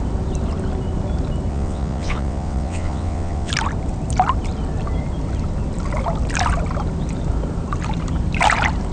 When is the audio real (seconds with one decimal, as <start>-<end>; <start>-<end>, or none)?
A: 0.0-1.5; 3.5-8.9

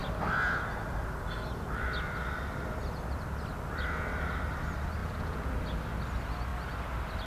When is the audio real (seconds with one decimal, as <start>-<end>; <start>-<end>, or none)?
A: 0.0-5.0; 5.5-7.3

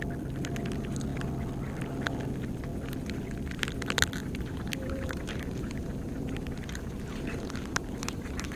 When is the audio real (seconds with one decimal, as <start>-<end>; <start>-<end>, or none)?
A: 0.0-4.2

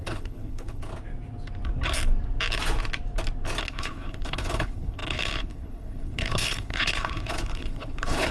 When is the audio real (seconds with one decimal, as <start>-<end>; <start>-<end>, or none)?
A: 0.9-3.6

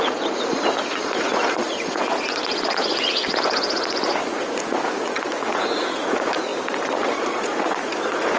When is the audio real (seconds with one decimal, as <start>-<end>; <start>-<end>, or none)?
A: 6.5-7.0

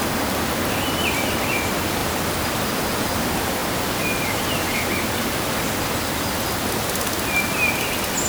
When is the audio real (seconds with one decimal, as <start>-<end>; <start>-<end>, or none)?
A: 0.0-8.3

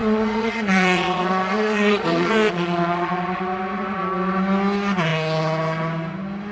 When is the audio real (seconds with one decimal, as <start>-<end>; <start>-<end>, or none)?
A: 3.4-6.5

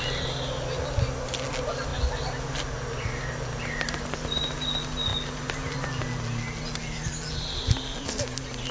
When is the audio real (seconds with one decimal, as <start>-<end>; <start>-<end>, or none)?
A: 0.0-8.7